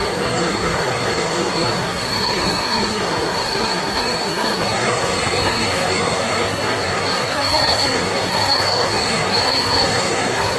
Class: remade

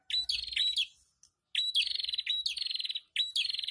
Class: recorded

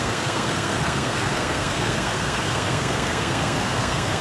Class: remade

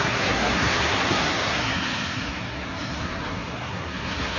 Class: remade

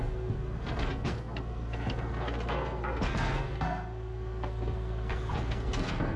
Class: remade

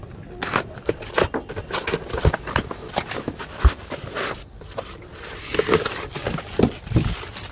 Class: recorded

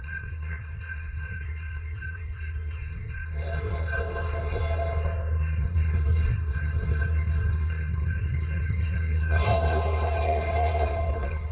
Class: remade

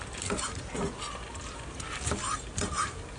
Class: recorded